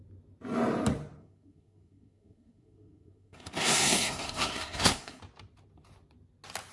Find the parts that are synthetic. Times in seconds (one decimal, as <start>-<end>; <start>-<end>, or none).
1.2-5.2